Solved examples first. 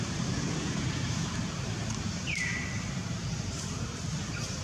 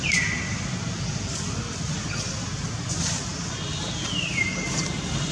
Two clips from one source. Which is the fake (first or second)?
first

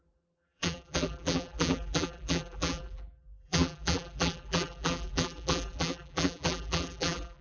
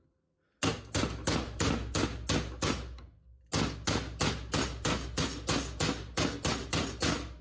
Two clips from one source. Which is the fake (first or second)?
first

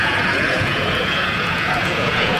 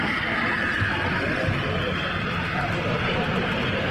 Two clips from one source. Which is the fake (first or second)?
first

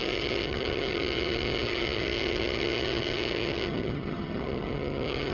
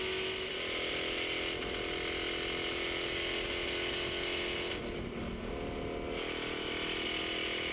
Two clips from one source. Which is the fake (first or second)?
first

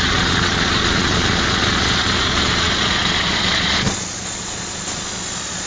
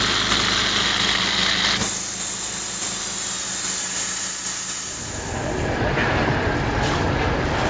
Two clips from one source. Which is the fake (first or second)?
first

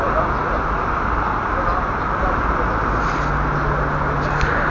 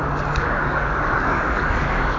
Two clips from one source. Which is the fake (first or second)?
second